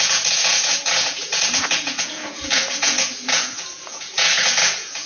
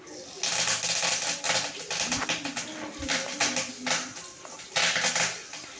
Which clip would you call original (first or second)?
second